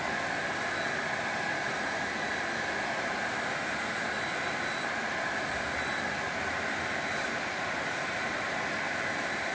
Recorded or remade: recorded